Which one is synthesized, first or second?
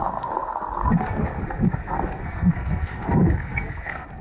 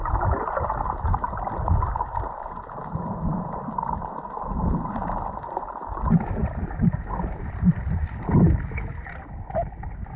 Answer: first